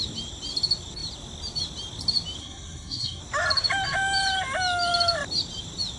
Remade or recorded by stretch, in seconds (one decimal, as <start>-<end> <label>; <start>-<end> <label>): 0.0-2.4 recorded; 2.4-3.2 remade; 3.2-6.0 recorded